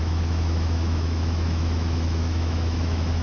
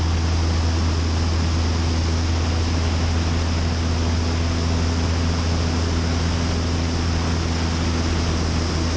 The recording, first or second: second